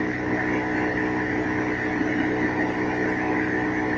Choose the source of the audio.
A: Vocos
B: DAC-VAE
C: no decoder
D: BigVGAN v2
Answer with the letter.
C